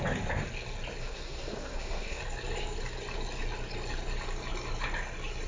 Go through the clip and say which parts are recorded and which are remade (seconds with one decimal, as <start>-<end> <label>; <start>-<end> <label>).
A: 0.0-1.0 recorded; 1.0-2.2 remade; 2.2-5.5 recorded